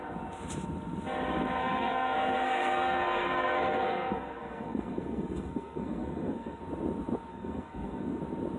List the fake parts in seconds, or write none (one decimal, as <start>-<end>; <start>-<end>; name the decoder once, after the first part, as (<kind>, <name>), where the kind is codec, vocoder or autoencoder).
1.6-6.6 (codec, SNAC); 7.3-8.2